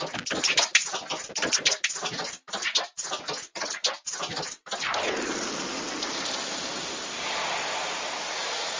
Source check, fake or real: fake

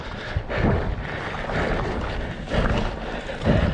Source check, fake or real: real